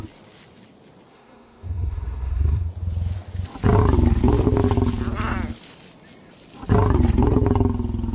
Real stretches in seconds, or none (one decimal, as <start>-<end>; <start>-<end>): 0.0-1.1; 2.7-8.1

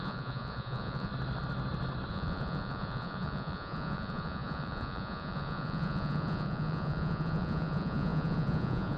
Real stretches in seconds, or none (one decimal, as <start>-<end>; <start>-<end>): 1.1-2.1

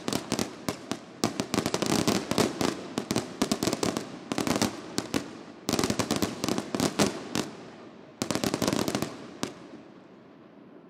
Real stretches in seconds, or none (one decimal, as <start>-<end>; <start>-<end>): 0.4-2.5; 6.4-7.2; 8.1-9.7

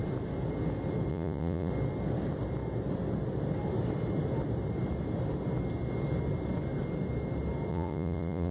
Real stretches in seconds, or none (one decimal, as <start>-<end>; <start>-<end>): 0.0-1.1; 1.7-7.7